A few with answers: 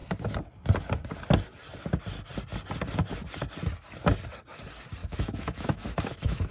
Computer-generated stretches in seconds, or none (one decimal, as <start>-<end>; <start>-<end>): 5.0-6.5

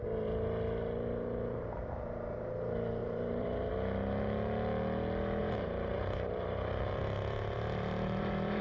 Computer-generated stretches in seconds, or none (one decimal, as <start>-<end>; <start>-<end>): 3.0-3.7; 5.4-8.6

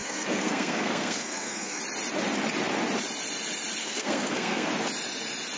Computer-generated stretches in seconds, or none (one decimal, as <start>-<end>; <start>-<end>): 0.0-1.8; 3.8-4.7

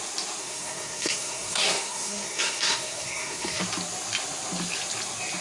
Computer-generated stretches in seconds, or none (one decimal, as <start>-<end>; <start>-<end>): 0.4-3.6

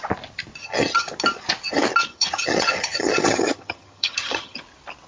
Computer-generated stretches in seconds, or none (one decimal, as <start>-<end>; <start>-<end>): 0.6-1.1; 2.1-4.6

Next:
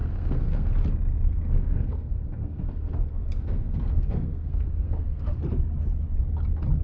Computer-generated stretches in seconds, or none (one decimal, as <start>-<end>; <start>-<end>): 0.0-0.7; 1.3-5.4

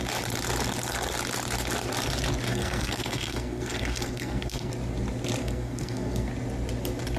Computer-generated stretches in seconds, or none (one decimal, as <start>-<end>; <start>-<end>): 2.5-4.7; 5.4-6.3